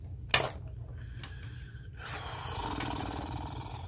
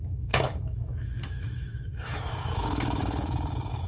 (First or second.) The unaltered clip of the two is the first